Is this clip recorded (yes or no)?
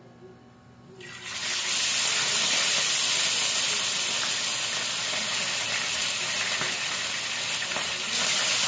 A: yes